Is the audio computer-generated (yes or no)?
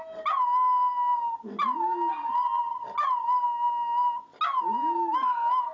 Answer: no